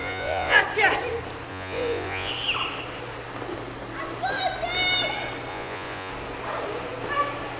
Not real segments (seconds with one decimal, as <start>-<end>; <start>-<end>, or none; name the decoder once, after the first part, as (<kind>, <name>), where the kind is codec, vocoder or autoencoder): 0.0-0.6 (vocoder, Vocos); 1.5-2.3; 5.5-6.1